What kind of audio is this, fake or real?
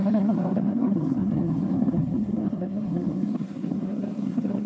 fake